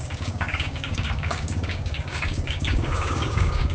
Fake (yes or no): yes